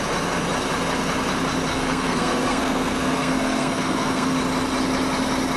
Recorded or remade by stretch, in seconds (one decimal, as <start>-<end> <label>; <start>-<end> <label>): 0.0-1.7 recorded; 1.7-4.4 remade; 4.4-5.6 recorded